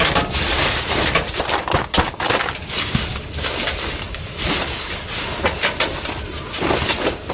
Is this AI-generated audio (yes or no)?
no